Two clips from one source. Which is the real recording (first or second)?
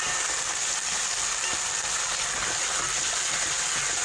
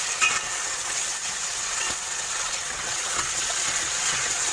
first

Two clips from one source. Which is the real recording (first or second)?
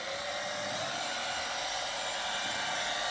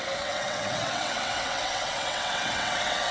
first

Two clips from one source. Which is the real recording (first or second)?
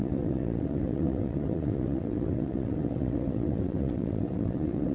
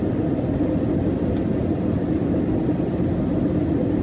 second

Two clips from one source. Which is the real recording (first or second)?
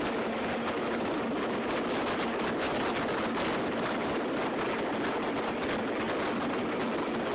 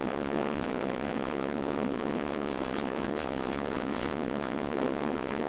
first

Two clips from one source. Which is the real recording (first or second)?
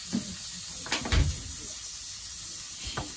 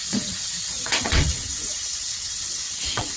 first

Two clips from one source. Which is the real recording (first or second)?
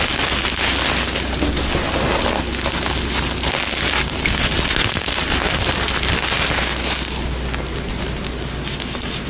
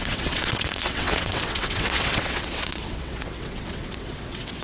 first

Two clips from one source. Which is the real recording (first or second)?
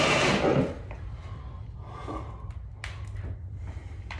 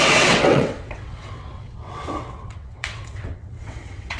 first